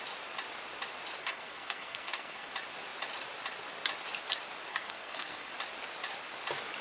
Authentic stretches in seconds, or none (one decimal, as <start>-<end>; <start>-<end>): 0.0-1.2; 2.5-4.7; 5.5-6.8